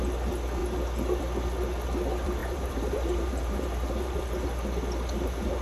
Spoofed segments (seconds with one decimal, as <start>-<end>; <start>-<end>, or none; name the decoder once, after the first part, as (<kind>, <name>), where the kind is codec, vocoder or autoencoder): 2.4-4.2 (vocoder, BigVGAN v2)

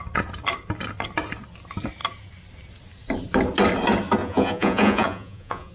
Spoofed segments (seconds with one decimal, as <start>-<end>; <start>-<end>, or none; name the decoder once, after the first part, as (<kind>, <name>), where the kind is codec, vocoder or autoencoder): 4.2-5.7 (vocoder, Vocos)

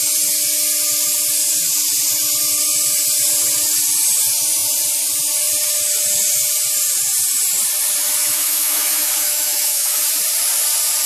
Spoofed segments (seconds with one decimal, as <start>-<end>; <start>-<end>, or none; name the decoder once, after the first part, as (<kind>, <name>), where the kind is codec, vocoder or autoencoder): 8.2-10.0 (autoencoder, DAC-VAE)

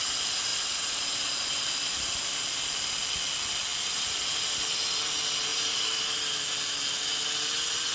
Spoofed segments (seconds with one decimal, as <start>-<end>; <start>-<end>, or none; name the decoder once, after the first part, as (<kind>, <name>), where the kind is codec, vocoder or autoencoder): 0.5-2.1 (vocoder, BigVGAN v2); 5.5-6.0

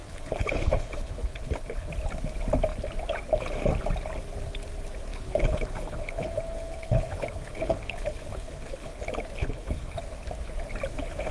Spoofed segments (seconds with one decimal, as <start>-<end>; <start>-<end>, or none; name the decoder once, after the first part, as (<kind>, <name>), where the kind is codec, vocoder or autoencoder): 0.0-1.9 (codec, HILCodec); 5.1-9.0; 9.4-10.0

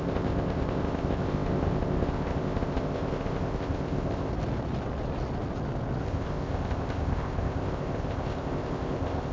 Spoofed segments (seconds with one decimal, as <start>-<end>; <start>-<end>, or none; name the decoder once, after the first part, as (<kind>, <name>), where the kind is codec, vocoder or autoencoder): 0.0-4.3 (codec, ZipCodec); 6.0-9.3

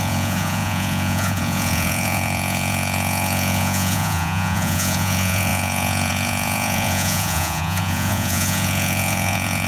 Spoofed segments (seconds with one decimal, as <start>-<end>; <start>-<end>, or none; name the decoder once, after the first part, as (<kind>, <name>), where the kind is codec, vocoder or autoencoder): 0.0-9.7 (vocoder, Vocos)